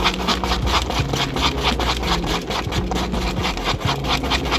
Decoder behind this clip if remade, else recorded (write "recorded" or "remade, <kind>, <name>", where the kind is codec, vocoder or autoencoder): recorded